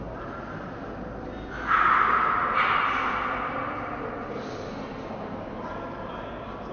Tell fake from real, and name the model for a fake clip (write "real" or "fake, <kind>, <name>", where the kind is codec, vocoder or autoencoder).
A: real